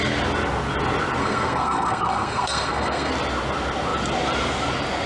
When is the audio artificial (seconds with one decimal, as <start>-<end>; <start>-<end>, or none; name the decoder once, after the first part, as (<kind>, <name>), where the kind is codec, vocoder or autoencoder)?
1.2-3.1 (codec, SNAC)